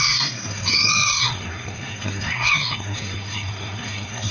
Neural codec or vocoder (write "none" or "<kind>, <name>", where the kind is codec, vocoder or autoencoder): codec, SNAC